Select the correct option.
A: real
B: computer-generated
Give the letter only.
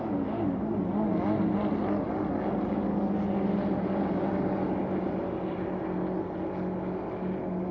A